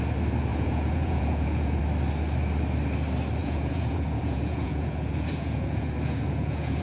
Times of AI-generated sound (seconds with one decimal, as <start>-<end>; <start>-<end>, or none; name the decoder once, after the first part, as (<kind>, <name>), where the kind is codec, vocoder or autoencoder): 0.5-1.8 (vocoder, Vocos); 3.4-6.8